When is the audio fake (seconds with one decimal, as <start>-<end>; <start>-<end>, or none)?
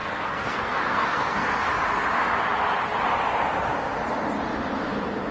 0.0-1.7